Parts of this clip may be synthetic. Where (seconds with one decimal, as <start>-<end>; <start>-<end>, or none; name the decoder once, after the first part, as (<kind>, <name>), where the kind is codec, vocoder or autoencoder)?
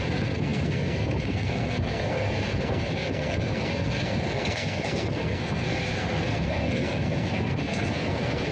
0.0-8.5 (codec, SNAC)